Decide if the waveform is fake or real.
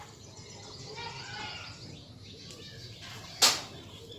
real